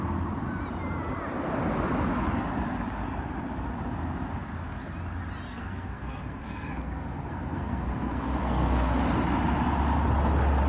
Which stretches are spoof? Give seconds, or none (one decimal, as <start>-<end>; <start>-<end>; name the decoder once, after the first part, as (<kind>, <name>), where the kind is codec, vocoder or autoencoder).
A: 5.5-9.0 (codec, SNAC)